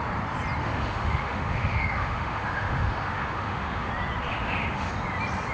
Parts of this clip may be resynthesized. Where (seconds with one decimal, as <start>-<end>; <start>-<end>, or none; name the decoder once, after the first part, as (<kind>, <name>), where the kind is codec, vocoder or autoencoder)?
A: 0.6-3.9 (autoencoder, DAC-VAE); 4.3-4.9